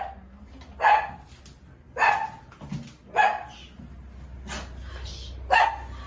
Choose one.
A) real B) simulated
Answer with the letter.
A